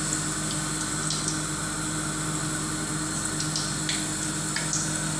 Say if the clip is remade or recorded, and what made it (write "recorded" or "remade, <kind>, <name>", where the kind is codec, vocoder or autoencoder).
recorded